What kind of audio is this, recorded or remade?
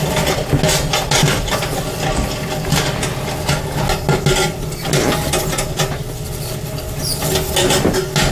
recorded